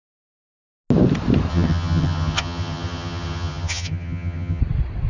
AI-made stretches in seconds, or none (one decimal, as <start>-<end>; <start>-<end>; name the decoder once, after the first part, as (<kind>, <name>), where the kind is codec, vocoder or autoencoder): 1.5-4.6 (vocoder, HiFi-GAN)